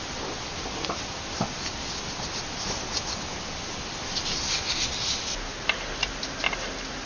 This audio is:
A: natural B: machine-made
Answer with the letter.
A